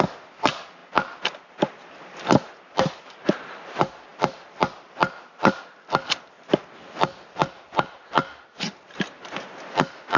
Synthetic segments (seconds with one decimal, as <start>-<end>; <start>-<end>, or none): none